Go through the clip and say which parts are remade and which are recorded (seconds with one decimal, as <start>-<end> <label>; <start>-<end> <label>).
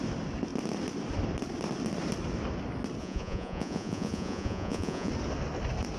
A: 0.0-3.0 recorded; 3.0-5.1 remade; 5.1-6.0 recorded